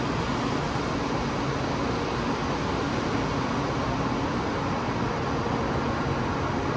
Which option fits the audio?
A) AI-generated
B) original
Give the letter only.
B